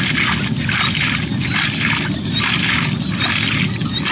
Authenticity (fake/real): real